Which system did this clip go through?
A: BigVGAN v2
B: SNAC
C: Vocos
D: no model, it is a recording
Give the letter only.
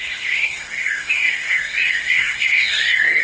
B